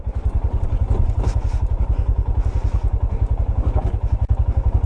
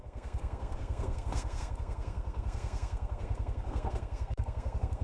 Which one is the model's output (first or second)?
second